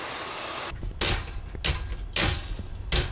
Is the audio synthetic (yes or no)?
no